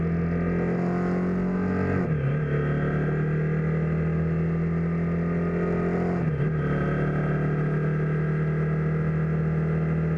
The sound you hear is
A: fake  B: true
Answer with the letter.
B